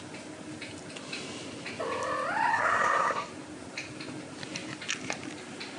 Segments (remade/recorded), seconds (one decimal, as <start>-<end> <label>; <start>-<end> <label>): 0.0-2.5 recorded; 2.5-3.3 remade; 3.3-5.8 recorded